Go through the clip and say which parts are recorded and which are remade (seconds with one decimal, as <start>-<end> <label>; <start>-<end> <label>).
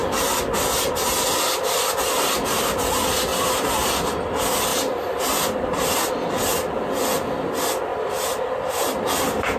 0.0-3.3 recorded; 3.3-3.9 remade; 3.9-4.7 recorded; 4.7-6.1 remade; 6.1-9.6 recorded